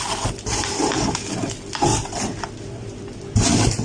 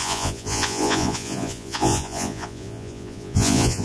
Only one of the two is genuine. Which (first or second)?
first